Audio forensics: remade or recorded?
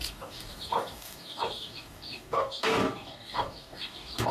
remade